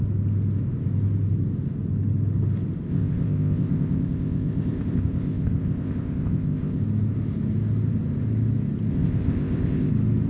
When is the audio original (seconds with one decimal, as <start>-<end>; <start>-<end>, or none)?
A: 0.0-2.9; 6.8-8.9; 9.9-10.3